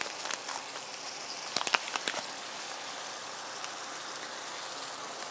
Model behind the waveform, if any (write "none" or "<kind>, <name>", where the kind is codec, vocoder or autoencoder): none